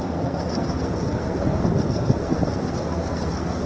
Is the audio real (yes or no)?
no